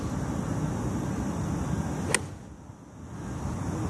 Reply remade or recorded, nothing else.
recorded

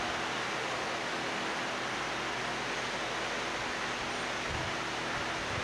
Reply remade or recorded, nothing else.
recorded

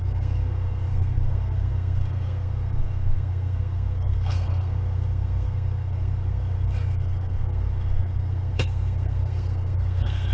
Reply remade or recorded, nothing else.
remade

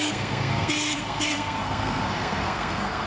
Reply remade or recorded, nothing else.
remade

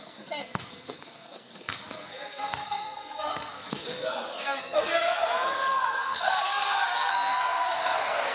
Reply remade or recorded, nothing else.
remade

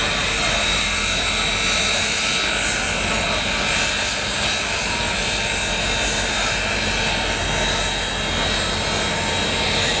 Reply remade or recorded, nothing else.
recorded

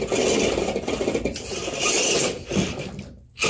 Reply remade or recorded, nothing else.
recorded